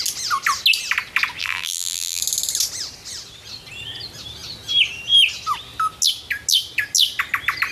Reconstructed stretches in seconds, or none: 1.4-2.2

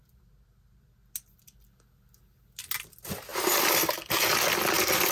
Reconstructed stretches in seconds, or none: none